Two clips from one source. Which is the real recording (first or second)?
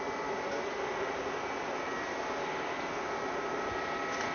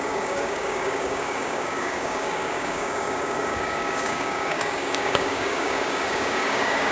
first